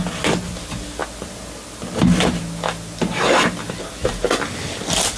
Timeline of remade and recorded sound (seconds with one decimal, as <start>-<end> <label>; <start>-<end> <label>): 0.0-5.2 recorded